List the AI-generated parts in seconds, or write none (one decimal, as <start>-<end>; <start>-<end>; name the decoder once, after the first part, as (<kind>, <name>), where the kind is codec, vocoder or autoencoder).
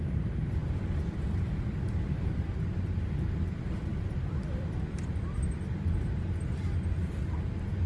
0.0-7.9 (vocoder, BigVGAN v2)